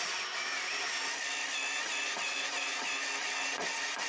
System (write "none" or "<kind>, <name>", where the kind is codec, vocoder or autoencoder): none